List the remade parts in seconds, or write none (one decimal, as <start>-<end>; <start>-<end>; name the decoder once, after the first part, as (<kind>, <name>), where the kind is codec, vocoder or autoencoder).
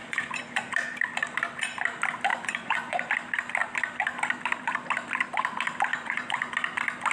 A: 0.0-0.7 (vocoder, Vocos); 2.3-3.1; 5.9-6.5